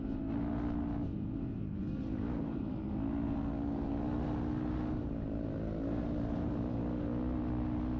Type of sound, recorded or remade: recorded